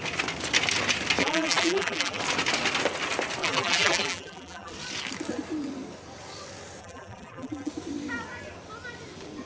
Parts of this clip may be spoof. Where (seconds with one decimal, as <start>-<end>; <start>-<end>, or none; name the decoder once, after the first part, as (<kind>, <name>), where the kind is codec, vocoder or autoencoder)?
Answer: 1.2-2.2 (vocoder, BigVGAN v2); 3.4-4.7; 6.8-7.7

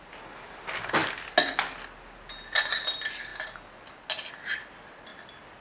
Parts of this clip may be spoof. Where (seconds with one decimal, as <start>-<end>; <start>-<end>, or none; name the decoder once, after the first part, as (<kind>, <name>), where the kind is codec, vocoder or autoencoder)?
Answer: 5.1-5.6 (vocoder, BigVGAN v2)

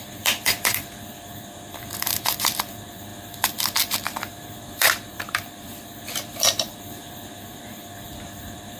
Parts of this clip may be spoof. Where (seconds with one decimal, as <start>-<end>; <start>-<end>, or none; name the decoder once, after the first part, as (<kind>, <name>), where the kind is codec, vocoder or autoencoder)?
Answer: 0.0-8.8 (vocoder, BigVGAN v2)

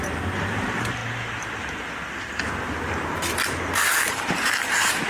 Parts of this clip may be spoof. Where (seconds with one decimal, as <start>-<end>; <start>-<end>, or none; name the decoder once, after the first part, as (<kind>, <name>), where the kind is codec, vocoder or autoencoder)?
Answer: 0.0-1.0 (vocoder, BigVGAN v2); 4.1-5.1

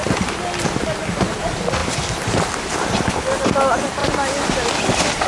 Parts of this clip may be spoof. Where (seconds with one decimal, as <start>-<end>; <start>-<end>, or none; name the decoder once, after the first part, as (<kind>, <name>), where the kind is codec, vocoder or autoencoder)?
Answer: 1.8-3.2 (vocoder, BigVGAN v2)

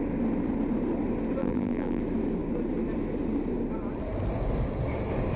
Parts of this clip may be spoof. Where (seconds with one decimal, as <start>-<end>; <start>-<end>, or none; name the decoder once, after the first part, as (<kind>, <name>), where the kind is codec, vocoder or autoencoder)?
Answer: 1.4-2.0 (vocoder, BigVGAN v2)

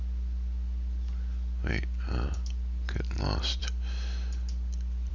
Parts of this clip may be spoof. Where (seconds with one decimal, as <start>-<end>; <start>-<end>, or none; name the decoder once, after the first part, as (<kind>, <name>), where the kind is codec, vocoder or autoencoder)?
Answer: none